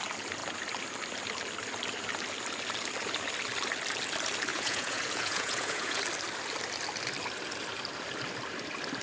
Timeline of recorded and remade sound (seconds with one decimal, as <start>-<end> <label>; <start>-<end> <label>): 0.0-4.5 recorded; 4.5-6.0 remade; 6.0-9.0 recorded